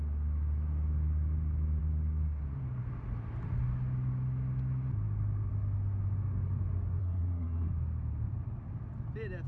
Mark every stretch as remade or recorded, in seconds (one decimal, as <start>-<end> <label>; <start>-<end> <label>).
0.0-7.0 recorded; 7.0-7.7 remade; 7.7-9.5 recorded